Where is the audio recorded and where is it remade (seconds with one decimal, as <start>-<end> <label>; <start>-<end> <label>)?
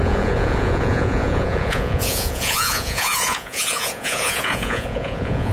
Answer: 0.0-5.5 remade